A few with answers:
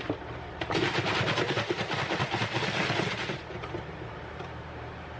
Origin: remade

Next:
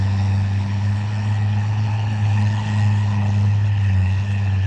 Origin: remade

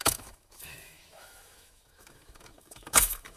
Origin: remade